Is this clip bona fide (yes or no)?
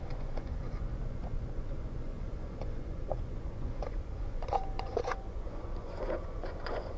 no